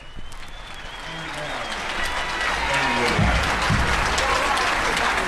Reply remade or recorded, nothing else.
recorded